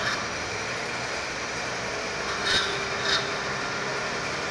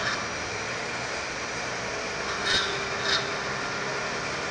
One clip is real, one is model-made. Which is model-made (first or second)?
first